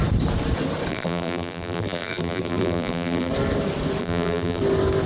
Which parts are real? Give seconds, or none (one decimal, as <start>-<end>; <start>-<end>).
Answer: 0.0-0.9; 3.3-4.0; 4.6-5.1